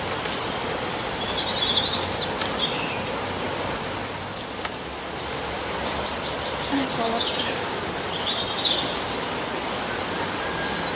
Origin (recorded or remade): recorded